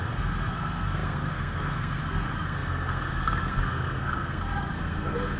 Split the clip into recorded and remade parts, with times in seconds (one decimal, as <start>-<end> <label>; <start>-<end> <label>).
0.0-5.4 remade